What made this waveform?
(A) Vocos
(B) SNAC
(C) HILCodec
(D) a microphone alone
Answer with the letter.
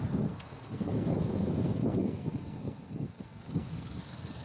B